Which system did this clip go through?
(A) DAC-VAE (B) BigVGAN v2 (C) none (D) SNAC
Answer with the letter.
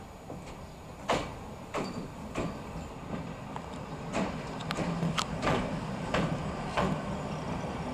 B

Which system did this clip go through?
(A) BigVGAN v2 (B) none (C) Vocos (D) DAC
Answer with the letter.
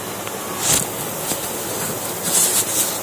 B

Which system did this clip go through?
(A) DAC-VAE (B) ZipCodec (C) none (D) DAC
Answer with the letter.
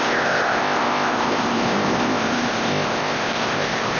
B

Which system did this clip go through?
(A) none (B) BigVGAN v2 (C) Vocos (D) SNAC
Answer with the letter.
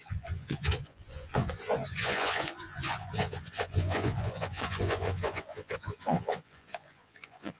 C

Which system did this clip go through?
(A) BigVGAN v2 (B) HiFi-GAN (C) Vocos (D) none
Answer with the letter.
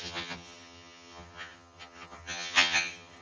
B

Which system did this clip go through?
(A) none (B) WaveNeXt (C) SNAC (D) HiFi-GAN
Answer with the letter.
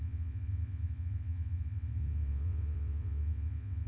B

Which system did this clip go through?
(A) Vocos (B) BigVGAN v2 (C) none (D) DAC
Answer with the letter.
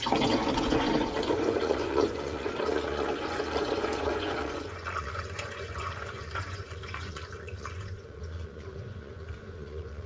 A